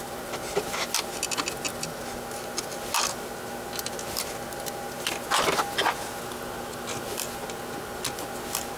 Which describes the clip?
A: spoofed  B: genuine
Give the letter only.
B